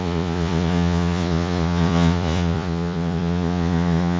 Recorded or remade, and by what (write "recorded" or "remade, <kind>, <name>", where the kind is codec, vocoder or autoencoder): remade, vocoder, Vocos